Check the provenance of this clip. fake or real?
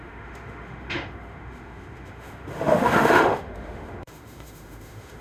fake